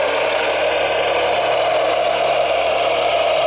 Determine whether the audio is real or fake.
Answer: real